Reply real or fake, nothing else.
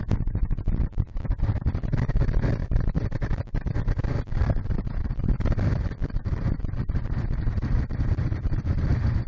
real